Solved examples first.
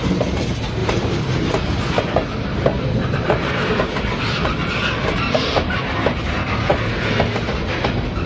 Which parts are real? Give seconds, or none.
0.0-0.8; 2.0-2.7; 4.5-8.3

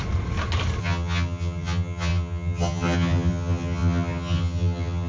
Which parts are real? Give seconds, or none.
0.0-0.8

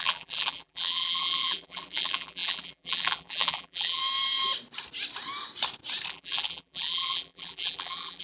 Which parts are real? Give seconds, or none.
4.0-6.1